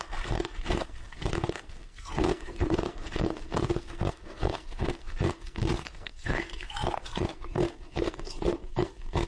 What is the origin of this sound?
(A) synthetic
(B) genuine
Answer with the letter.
A